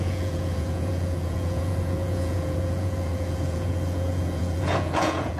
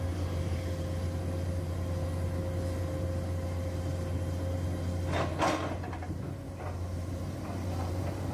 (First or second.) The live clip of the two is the second